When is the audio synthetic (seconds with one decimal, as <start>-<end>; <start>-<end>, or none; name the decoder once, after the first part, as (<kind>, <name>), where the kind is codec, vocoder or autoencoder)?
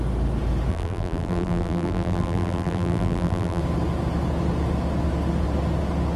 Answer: 0.7-3.6 (vocoder, BigVGAN v2)